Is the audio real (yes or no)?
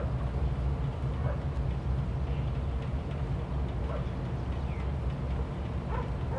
yes